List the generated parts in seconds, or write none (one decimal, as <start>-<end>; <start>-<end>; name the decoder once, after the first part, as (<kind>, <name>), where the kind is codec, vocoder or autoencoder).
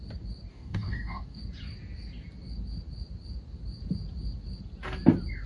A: 0.5-1.4 (codec, DAC)